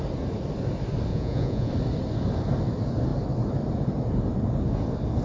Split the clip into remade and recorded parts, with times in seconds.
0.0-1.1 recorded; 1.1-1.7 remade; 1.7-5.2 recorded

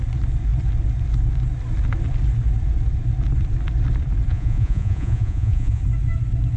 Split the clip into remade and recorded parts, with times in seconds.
0.0-4.3 recorded; 4.3-5.8 remade; 5.8-6.6 recorded

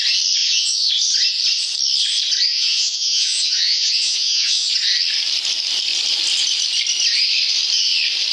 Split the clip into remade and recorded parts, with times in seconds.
0.0-0.4 recorded; 0.4-0.9 remade; 0.9-2.5 recorded; 2.5-4.7 remade; 4.7-8.3 recorded

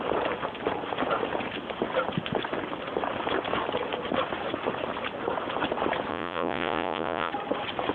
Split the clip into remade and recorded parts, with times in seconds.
0.0-6.1 recorded; 6.1-7.3 remade; 7.3-7.9 recorded

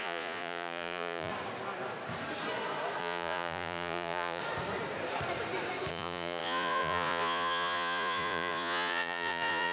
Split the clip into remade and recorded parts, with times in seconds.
0.0-1.3 remade; 1.3-3.0 recorded; 3.0-4.4 remade; 4.4-5.9 recorded; 5.9-9.7 remade